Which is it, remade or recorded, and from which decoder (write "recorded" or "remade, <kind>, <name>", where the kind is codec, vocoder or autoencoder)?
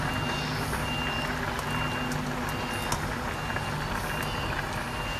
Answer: recorded